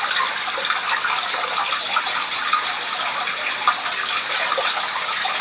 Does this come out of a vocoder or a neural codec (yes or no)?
no